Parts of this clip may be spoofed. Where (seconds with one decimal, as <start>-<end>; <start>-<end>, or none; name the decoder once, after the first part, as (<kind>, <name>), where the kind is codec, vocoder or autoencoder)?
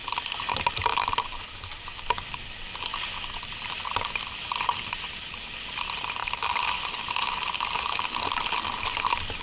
none